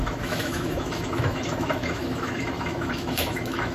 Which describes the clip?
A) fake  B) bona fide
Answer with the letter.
A